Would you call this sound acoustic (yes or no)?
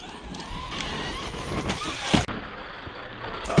yes